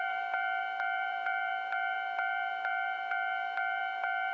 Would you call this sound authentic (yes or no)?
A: no